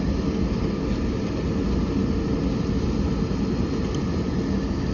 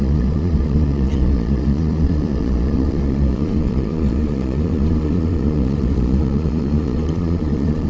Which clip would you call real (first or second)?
first